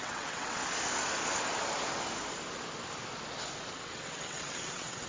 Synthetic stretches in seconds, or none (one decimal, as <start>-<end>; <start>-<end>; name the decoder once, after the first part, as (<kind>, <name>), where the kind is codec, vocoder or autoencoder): 0.0-0.6 (vocoder, WaveNeXt); 3.7-5.1